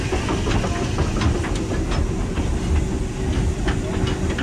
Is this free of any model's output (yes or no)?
yes